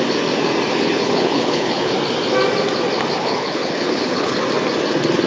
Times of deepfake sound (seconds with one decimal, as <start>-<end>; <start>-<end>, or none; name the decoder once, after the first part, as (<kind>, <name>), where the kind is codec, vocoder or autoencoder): 0.7-1.9 (codec, HILCodec); 3.2-4.4